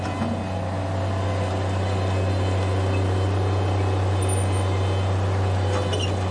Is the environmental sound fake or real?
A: real